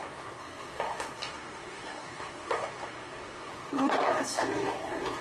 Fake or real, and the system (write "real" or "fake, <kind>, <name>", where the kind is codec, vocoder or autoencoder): fake, codec, SNAC